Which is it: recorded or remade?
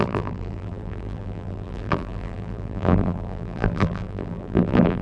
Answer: remade